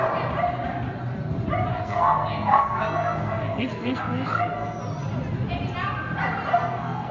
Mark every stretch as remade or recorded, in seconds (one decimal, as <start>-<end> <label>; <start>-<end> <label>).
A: 0.0-1.7 recorded; 1.7-4.8 remade; 4.8-6.5 recorded; 6.5-7.1 remade